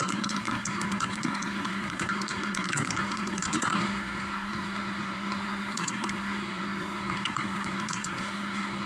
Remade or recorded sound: remade